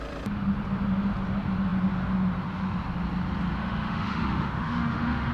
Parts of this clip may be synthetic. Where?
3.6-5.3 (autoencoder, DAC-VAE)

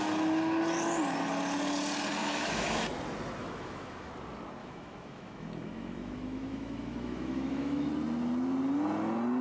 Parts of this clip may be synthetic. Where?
2.2-2.9 (autoencoder, DAC-VAE); 3.4-4.1; 4.6-7.9

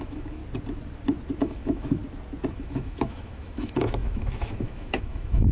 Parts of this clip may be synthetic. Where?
0.0-0.4 (autoencoder, DAC-VAE); 1.4-2.0; 2.5-5.5

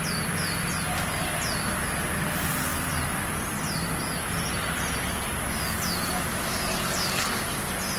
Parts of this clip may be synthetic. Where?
none

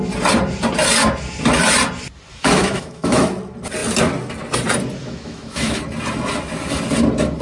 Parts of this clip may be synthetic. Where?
2.3-3.2 (autoencoder, DAC-VAE); 5.0-5.8

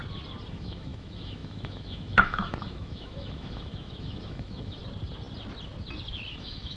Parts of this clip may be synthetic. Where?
0.5-4.8 (autoencoder, DAC-VAE); 6.3-6.8

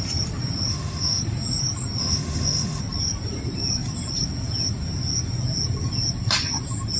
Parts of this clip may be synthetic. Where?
0.7-1.2 (autoencoder, DAC-VAE); 2.0-2.8

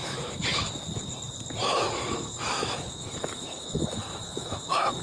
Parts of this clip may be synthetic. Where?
0.0-0.7 (autoencoder, DAC-VAE); 1.7-5.0